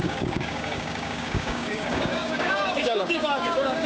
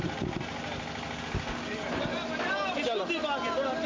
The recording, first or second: second